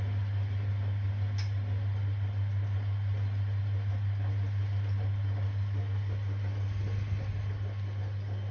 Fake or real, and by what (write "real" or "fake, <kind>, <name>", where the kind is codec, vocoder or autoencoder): real